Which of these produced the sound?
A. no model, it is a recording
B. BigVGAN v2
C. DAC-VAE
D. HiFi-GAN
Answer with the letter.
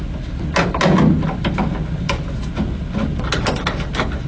A